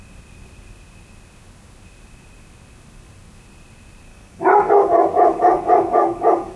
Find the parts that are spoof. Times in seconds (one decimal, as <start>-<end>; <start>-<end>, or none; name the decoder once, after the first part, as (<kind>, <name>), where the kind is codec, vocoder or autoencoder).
4.1-6.6 (codec, DAC)